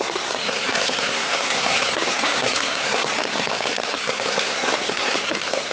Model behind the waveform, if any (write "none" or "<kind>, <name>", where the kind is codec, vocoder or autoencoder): codec, SNAC